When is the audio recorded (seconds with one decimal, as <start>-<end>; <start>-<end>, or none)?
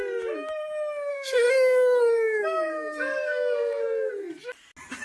0.0-1.1; 4.1-5.0